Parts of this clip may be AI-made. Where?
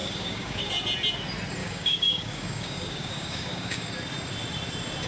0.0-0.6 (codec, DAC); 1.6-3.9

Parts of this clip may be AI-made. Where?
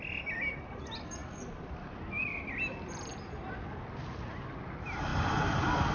1.2-3.6 (vocoder, BigVGAN v2); 5.1-5.9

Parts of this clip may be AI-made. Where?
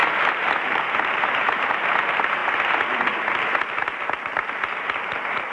0.0-2.4 (vocoder, BigVGAN v2); 5.0-5.5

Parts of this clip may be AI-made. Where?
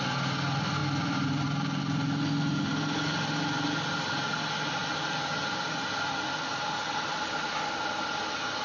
none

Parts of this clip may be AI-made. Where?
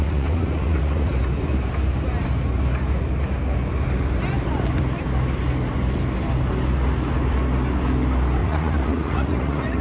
0.0-1.1 (vocoder, Vocos); 8.4-9.8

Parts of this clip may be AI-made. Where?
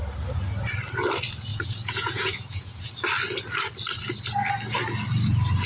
1.5-2.9 (vocoder, Vocos)